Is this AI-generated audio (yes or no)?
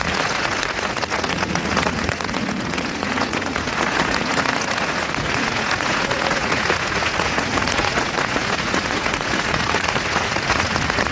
yes